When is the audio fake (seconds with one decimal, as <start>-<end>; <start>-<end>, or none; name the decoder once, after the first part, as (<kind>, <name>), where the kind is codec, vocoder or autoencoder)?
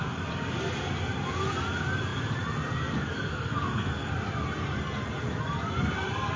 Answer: 3.3-4.1 (codec, SNAC)